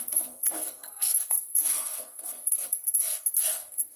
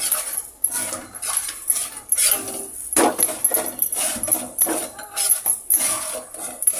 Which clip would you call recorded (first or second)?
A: second